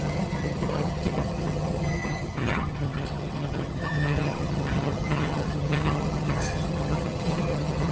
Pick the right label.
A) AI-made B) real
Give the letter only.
A